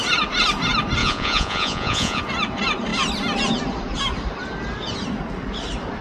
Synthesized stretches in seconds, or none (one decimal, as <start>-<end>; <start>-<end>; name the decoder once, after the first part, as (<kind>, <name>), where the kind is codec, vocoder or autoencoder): 1.0-2.2 (vocoder, Vocos)